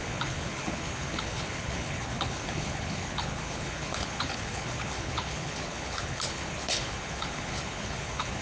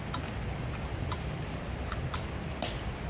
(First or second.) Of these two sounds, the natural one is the second